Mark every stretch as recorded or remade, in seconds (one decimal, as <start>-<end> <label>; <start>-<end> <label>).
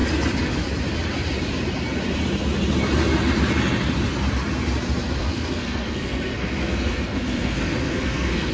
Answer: 0.0-5.2 recorded; 5.2-8.5 remade